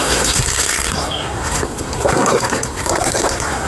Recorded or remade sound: remade